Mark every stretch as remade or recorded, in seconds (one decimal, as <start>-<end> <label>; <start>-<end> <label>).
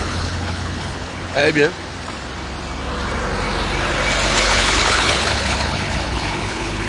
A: 0.0-1.4 remade; 1.4-4.4 recorded; 4.4-6.9 remade